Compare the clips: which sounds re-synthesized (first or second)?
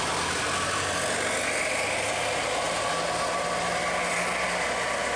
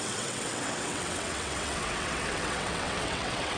second